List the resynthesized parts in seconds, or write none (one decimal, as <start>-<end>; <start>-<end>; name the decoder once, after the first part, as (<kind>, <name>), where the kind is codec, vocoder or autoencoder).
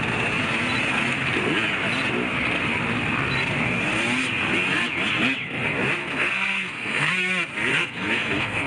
6.0-7.1 (codec, SNAC); 7.7-8.7